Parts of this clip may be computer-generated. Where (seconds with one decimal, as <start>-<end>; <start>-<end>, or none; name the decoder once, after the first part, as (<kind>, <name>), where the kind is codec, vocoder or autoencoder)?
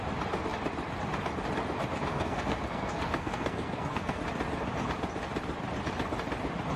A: 2.1-4.2 (codec, SNAC)